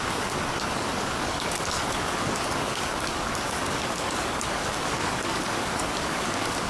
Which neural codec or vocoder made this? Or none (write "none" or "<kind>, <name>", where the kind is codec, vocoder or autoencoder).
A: codec, DAC